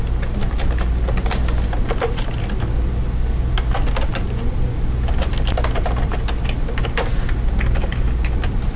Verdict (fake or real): real